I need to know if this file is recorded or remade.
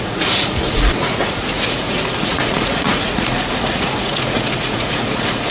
remade